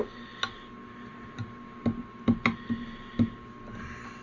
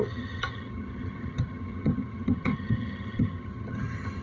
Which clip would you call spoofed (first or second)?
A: second